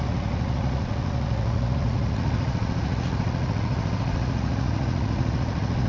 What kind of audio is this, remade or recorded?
remade